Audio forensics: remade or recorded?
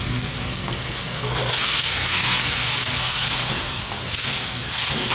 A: remade